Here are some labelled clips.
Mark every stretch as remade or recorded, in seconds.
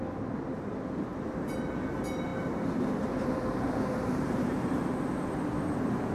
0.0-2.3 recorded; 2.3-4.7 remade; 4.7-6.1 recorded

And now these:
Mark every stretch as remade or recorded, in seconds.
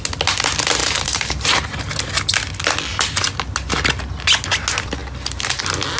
0.0-0.8 recorded; 0.8-1.8 remade; 1.8-6.0 recorded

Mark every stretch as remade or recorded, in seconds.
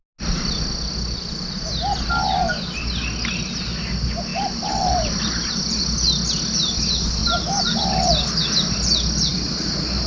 0.0-4.3 recorded; 4.3-5.5 remade; 5.5-7.2 recorded; 7.2-7.8 remade; 7.8-9.3 recorded; 9.3-10.1 remade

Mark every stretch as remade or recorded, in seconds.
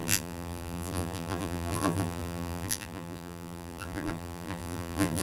0.0-5.2 remade